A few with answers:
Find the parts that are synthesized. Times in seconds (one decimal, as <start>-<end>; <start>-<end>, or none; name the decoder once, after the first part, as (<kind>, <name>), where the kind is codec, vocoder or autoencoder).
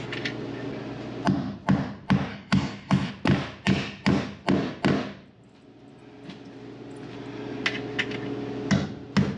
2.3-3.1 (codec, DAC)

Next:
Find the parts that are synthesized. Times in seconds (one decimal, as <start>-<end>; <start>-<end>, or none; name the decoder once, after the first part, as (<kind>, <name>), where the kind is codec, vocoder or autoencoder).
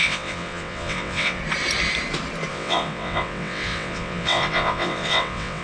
0.0-1.4 (vocoder, WaveNeXt); 2.5-5.6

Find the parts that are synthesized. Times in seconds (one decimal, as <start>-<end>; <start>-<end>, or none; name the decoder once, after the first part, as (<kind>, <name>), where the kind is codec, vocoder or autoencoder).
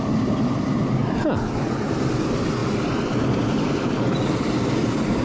0.0-1.0 (vocoder, BigVGAN v2); 2.1-2.6; 4.1-5.2